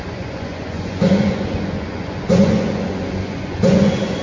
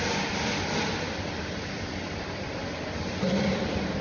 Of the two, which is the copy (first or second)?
first